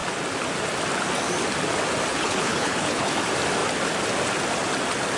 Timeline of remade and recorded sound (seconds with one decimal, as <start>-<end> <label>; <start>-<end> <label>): 0.0-2.1 recorded; 2.1-3.2 remade; 3.2-5.2 recorded